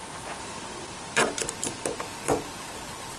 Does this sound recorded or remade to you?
recorded